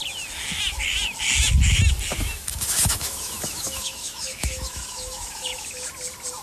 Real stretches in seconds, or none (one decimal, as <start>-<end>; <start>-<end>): 0.0-2.1; 5.9-6.4